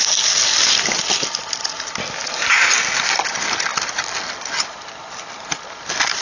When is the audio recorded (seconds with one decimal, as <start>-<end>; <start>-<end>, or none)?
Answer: 0.0-6.2